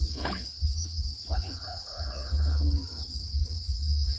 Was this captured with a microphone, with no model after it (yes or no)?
no